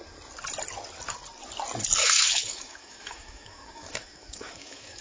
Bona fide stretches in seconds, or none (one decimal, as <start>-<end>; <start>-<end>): 0.0-2.0